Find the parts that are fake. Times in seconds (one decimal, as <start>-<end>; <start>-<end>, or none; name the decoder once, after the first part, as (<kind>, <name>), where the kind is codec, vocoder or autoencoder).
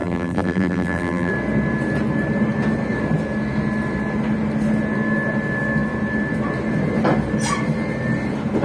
0.0-1.3 (vocoder, BigVGAN v2)